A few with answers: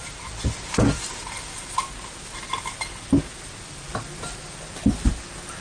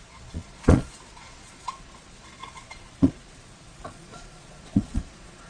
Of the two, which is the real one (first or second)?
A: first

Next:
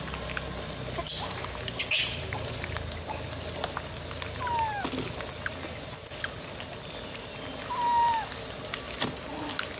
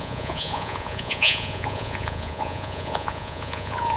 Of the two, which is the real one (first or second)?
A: first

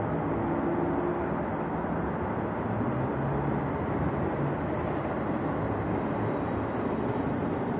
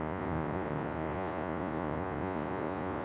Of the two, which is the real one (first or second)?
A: first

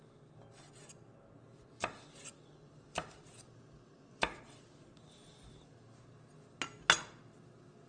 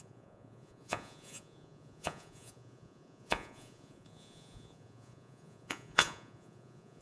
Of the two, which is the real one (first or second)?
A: first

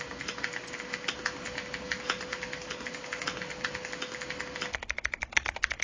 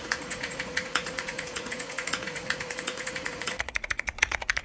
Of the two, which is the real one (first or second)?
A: first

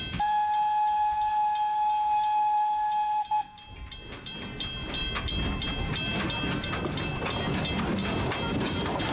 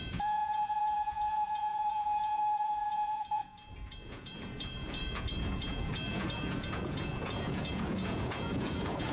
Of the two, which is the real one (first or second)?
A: first